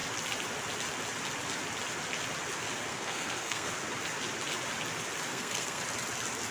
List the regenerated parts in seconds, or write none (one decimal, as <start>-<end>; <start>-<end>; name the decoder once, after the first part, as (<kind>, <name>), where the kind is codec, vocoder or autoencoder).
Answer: 2.9-3.7 (codec, SNAC); 5.3-5.8